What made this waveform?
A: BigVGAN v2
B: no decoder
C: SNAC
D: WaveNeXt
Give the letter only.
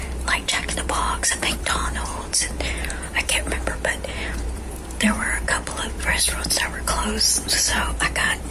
A